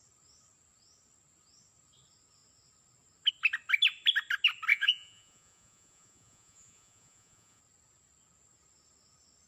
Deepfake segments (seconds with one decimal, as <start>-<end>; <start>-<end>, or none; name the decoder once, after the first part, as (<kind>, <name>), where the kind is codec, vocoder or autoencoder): 4.7-7.6 (vocoder, Vocos)